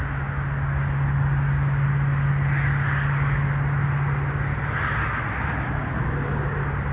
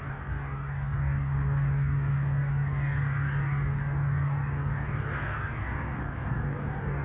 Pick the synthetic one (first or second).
second